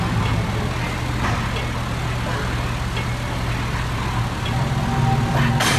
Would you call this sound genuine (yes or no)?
yes